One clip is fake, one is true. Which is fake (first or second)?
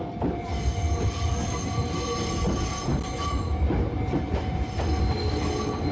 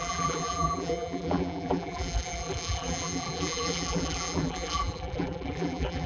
second